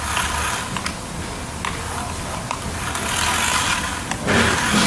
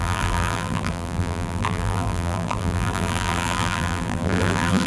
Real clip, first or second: first